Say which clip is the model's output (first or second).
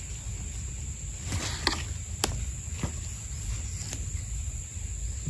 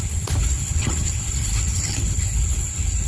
second